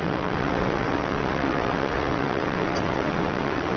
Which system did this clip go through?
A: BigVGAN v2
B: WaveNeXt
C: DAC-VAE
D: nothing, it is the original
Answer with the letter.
B